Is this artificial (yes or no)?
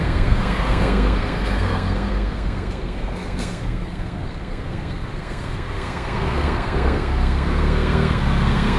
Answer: yes